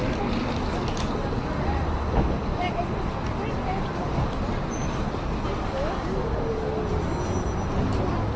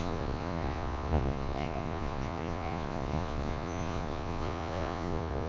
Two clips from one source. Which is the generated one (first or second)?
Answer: second